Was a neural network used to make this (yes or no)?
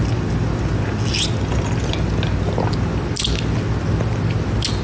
no